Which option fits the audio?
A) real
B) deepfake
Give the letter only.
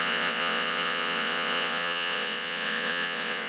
B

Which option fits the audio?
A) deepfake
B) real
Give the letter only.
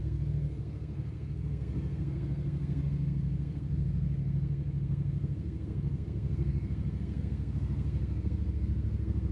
A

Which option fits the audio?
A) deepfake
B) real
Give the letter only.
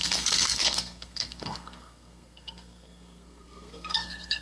A